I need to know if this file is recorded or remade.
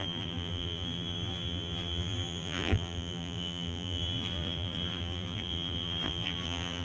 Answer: remade